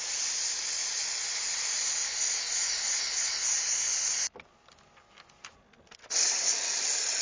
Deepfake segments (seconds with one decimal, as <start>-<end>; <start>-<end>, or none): none